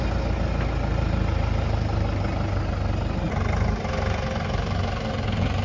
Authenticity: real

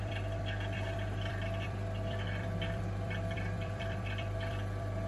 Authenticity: fake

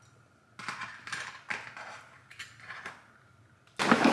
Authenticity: real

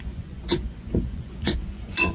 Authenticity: fake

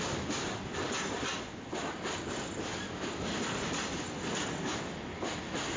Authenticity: real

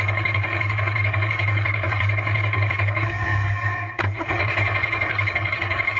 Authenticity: fake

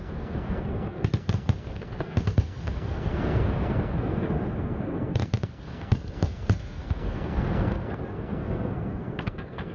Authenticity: fake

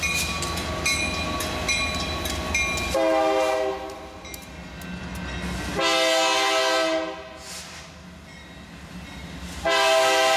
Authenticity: real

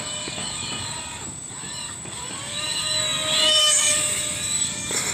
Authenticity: fake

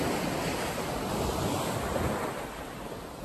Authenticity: real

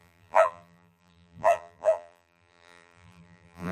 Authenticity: fake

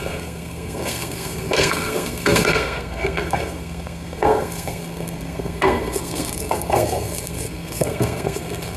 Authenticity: fake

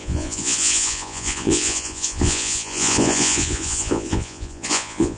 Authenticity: fake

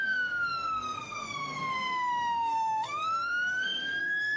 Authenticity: fake